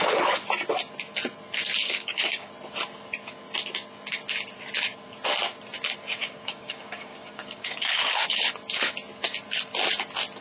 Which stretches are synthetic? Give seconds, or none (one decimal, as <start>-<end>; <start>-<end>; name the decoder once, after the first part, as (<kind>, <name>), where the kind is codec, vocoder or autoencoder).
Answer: 1.8-2.5 (codec, DAC); 6.2-8.5